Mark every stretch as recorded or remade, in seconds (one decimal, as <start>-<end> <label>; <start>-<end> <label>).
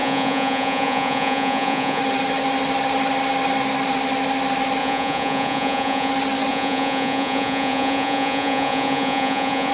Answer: 0.0-2.0 remade; 2.0-4.8 recorded; 4.8-6.1 remade; 6.1-6.5 recorded; 6.5-9.7 remade